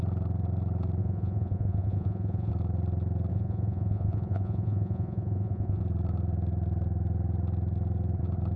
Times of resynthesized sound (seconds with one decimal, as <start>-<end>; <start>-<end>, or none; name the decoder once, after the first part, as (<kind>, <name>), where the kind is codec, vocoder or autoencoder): 1.0-2.5 (vocoder, Vocos); 3.3-5.8